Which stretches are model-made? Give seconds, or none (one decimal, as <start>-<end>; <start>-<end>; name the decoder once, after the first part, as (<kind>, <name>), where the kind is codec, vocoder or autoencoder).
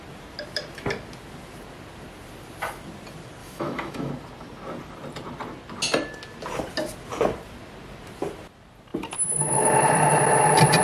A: 3.4-4.1 (autoencoder, DAC-VAE)